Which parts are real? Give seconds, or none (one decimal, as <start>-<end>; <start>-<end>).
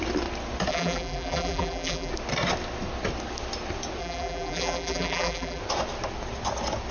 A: 0.0-0.7; 2.1-4.0; 5.6-6.9